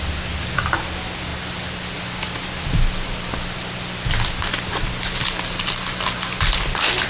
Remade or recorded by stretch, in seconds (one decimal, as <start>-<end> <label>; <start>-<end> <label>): 0.0-7.1 recorded